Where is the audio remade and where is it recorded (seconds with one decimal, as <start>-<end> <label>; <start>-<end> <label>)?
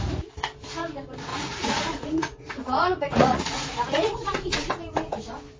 0.0-1.3 recorded; 1.3-4.7 remade; 4.7-5.6 recorded